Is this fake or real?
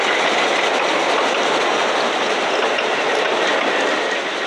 real